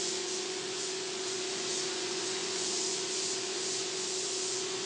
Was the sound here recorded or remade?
remade